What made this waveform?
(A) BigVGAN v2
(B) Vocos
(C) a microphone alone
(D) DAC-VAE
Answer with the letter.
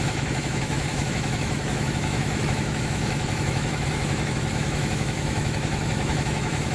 D